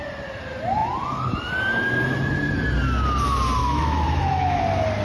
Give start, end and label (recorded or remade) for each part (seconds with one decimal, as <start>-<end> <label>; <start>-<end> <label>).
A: 0.0-3.6 recorded; 3.6-4.6 remade; 4.6-5.0 recorded